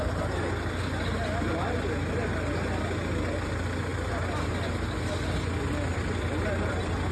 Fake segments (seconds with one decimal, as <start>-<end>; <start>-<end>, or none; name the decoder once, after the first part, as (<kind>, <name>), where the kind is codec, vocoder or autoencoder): none